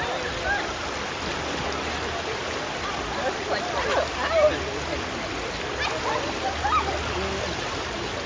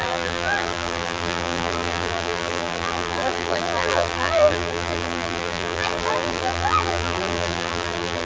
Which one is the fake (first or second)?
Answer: second